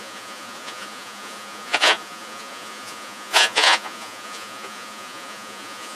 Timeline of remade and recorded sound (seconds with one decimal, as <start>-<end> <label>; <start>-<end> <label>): 0.0-6.0 remade